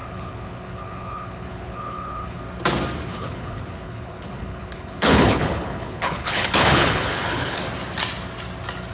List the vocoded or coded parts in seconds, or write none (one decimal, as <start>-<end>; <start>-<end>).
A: 0.0-2.4; 3.1-7.6